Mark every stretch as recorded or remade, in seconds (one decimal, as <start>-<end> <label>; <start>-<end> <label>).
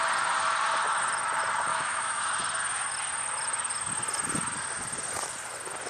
0.0-1.7 recorded; 1.7-2.2 remade; 2.2-5.9 recorded